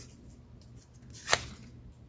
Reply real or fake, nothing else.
real